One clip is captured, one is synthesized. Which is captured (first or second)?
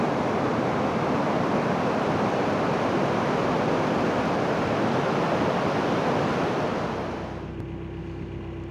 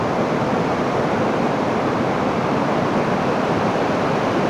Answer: first